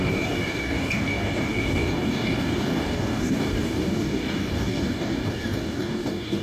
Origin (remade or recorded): remade